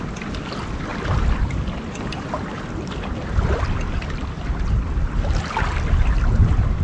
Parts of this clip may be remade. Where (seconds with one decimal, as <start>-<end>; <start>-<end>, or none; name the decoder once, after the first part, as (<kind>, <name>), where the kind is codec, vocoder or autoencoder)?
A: none